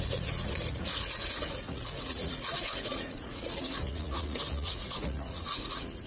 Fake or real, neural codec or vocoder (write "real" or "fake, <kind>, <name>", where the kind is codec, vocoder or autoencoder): fake, vocoder, Vocos